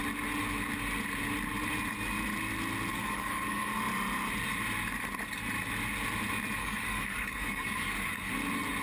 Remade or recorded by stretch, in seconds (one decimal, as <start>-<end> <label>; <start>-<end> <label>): 0.0-2.9 recorded; 2.9-3.7 remade; 3.7-6.6 recorded; 6.6-8.3 remade; 8.3-8.8 recorded